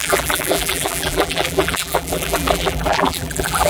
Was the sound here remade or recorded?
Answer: remade